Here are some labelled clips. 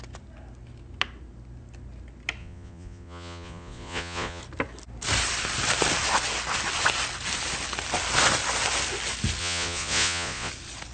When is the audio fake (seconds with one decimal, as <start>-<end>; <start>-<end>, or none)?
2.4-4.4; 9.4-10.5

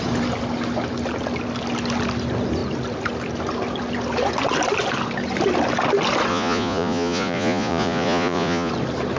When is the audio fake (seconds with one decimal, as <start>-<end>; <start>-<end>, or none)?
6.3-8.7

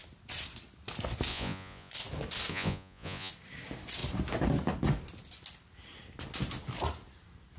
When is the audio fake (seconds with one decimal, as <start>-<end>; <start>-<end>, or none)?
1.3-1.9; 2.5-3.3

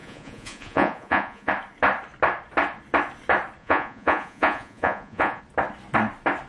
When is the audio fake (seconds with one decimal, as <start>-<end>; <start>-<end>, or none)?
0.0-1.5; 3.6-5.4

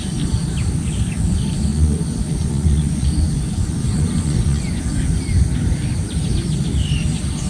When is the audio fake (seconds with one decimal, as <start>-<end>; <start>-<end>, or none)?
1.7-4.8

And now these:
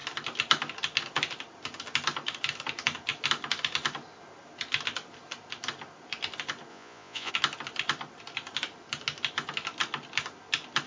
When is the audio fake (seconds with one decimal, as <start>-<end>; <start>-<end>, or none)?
6.7-7.3

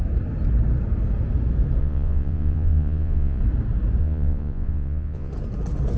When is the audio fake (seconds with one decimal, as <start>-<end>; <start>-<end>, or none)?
1.8-3.4; 4.0-5.3

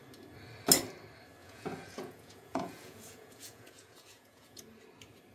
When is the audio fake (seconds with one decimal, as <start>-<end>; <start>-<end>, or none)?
1.4-4.6